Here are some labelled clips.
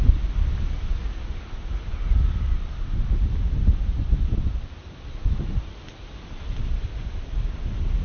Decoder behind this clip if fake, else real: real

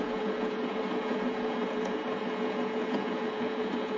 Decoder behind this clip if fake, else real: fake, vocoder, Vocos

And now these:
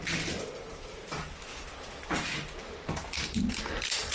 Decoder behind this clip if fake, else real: real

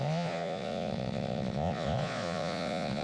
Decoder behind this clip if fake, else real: fake, vocoder, Vocos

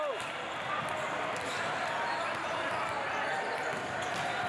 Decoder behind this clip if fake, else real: real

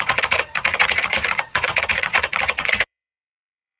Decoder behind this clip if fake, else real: fake, vocoder, Vocos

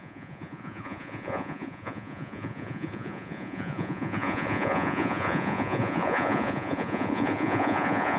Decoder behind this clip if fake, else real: fake, vocoder, Vocos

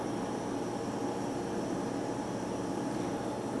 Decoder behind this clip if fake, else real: real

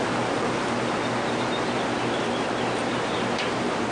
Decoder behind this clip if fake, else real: real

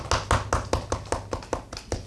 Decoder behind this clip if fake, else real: real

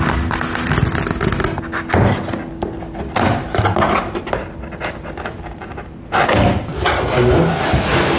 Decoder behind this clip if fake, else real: real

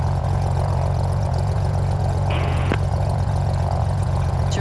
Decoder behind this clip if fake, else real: fake, vocoder, Vocos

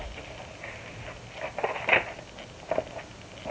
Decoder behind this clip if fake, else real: real